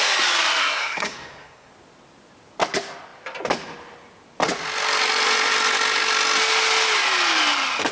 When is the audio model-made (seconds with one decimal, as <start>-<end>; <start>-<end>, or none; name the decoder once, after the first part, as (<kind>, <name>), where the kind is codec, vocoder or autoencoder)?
0.6-1.7 (codec, SNAC)